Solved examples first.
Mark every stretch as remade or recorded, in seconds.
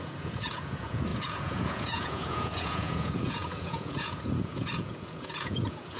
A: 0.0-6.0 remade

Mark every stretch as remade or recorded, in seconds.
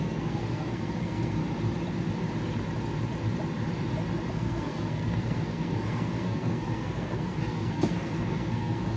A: 0.0-1.4 remade; 1.4-4.3 recorded; 4.3-9.0 remade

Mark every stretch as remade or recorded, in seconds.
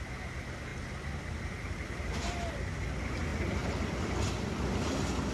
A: 0.0-5.3 recorded